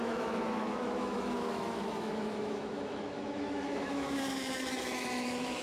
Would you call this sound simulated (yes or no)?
yes